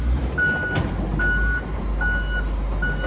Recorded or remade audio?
recorded